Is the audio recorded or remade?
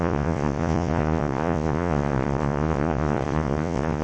remade